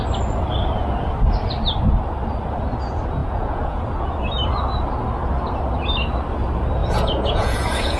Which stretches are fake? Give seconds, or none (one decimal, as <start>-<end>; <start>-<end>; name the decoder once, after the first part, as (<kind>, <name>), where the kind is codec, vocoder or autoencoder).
3.2-3.8 (vocoder, Vocos); 6.8-8.0